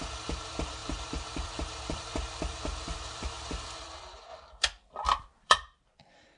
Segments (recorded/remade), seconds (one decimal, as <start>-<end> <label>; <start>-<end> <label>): 0.0-6.4 remade